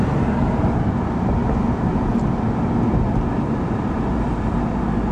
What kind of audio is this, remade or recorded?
recorded